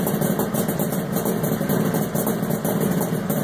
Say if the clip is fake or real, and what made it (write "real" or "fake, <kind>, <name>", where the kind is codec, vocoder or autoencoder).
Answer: real